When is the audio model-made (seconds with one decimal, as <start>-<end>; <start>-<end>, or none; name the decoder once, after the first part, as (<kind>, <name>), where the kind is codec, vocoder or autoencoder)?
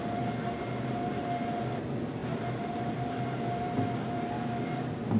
none